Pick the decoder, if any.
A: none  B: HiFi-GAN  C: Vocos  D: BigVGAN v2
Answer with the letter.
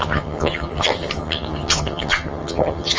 B